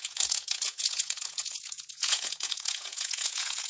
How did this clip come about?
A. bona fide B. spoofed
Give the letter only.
B